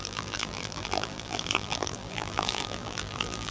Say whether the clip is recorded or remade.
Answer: remade